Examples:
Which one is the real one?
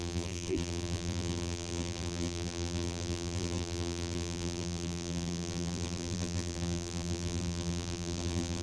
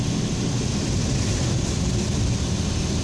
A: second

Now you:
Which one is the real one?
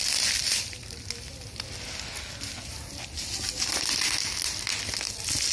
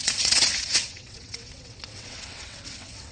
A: first